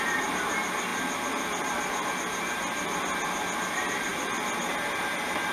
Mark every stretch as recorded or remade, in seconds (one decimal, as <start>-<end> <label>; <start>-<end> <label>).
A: 0.0-5.5 recorded